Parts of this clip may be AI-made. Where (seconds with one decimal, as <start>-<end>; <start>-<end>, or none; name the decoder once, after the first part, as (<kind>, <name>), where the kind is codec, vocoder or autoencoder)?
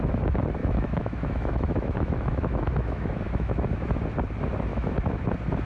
0.6-4.0 (autoencoder, DAC-VAE); 4.7-5.2